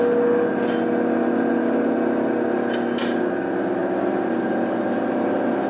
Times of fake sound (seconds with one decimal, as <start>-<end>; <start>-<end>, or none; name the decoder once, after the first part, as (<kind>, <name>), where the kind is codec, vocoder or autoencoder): none